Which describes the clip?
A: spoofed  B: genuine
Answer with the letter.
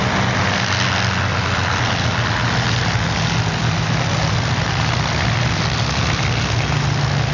B